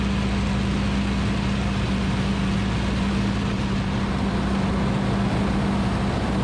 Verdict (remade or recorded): recorded